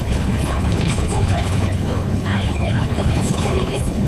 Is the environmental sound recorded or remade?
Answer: remade